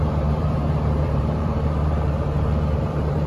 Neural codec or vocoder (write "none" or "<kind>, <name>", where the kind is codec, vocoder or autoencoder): vocoder, BigVGAN v2